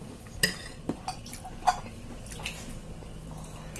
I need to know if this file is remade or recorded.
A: recorded